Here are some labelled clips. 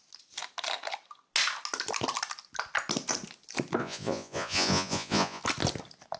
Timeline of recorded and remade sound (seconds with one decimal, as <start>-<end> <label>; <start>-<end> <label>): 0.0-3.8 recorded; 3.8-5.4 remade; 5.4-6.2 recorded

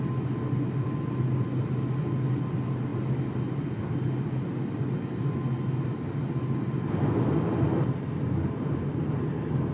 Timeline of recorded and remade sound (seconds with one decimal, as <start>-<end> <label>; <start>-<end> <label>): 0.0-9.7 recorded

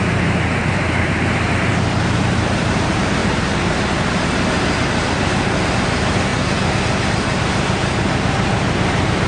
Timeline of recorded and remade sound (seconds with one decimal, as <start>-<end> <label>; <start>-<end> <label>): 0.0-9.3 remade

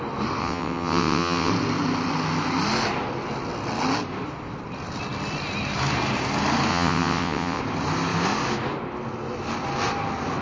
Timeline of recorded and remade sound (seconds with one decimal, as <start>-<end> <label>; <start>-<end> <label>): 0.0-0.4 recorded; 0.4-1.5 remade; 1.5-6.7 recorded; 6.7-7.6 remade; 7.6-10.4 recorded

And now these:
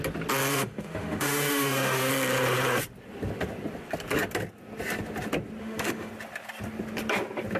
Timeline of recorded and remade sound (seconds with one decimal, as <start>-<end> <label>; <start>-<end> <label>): 0.0-0.5 recorded; 0.5-2.1 remade; 2.1-5.6 recorded; 5.6-6.1 remade; 6.1-7.6 recorded